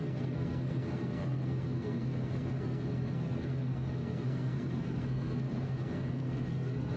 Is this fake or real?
fake